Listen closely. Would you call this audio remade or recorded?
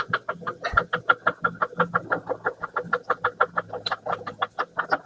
recorded